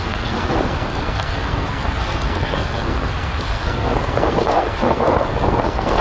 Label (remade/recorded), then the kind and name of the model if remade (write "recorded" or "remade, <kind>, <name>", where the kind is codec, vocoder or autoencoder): remade, codec, SNAC